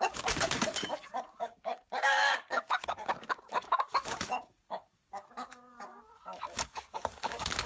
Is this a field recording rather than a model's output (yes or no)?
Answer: no